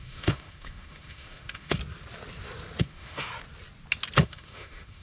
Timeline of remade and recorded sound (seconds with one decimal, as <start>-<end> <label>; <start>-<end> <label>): 0.0-1.8 remade; 1.8-2.8 recorded; 2.8-3.3 remade; 3.3-4.2 recorded; 4.2-5.0 remade